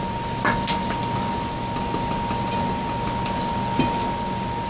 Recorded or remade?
recorded